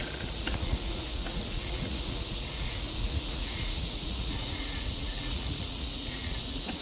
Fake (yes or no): yes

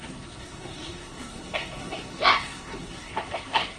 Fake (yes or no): yes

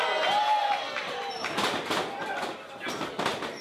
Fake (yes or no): no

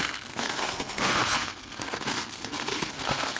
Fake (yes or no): yes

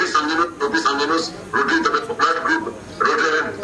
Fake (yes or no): no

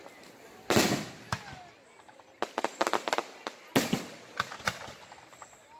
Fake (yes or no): no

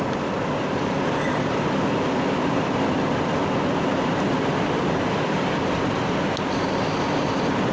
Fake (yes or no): no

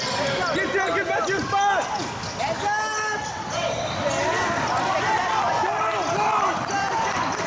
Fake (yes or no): no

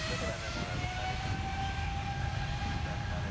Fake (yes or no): no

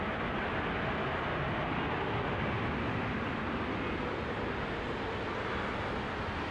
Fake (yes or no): no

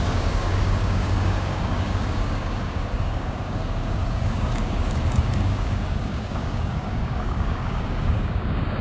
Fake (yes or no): yes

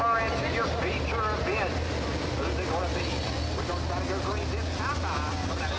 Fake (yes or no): no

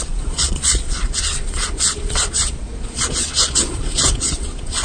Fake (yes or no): yes